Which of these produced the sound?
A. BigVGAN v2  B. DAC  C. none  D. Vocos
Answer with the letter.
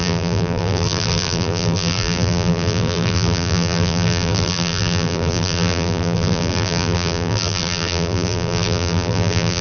A